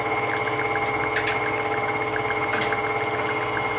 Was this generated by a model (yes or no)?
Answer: no